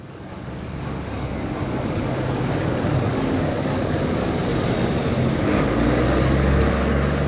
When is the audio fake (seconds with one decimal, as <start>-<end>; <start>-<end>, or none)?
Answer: 0.0-4.5; 5.3-7.3